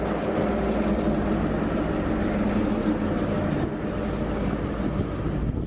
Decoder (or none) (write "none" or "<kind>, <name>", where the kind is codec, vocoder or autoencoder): none